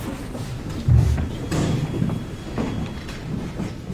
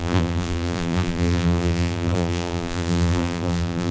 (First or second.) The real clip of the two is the first